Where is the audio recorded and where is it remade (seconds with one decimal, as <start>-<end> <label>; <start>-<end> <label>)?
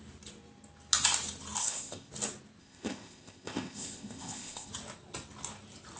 0.0-1.6 recorded; 1.6-2.1 remade; 2.1-2.6 recorded; 2.6-4.7 remade; 4.7-6.0 recorded